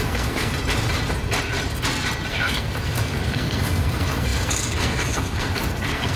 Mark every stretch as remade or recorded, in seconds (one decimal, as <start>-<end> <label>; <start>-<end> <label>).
0.0-0.5 remade; 0.5-2.3 recorded; 2.3-6.2 remade